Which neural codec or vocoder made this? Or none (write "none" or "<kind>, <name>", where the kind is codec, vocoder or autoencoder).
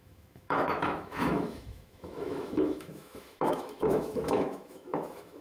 autoencoder, DAC-VAE